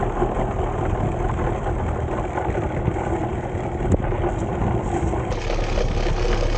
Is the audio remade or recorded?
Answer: recorded